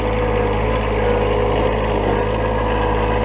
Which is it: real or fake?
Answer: real